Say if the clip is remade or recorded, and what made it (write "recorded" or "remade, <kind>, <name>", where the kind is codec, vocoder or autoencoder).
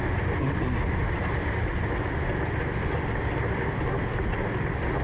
recorded